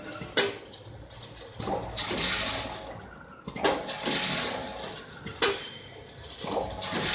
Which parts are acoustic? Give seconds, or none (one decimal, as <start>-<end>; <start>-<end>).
0.0-7.1